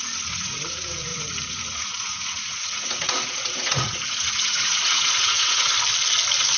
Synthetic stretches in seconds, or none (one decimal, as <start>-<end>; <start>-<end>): 0.0-5.7